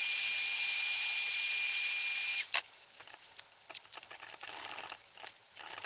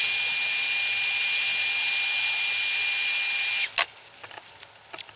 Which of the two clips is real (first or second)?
second